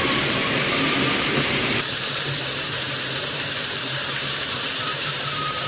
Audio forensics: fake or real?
fake